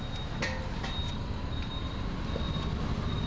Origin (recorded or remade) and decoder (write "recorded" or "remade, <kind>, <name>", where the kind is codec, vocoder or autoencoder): recorded